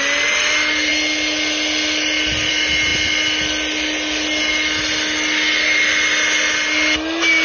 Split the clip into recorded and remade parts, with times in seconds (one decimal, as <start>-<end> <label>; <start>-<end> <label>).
0.0-7.4 recorded

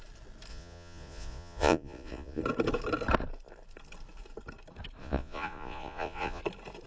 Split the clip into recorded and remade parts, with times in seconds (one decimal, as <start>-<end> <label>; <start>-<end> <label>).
0.0-0.5 recorded; 0.5-2.4 remade; 2.4-5.0 recorded; 5.0-6.4 remade; 6.4-6.9 recorded